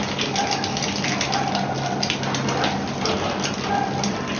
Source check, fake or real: real